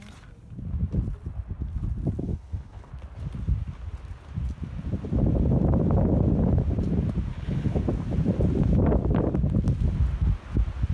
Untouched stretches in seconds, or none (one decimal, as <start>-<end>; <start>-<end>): 0.0-2.2; 2.9-7.3; 7.8-10.9